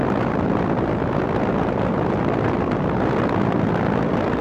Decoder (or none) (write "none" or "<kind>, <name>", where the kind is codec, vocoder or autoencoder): vocoder, BigVGAN v2